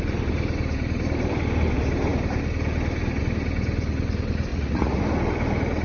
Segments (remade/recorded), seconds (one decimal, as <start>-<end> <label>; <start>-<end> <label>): 0.0-4.5 recorded; 4.5-5.0 remade; 5.0-5.8 recorded